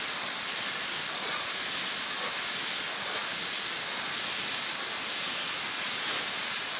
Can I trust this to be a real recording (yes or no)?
yes